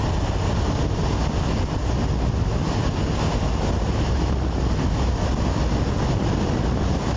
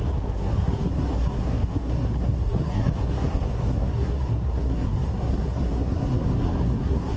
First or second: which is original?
first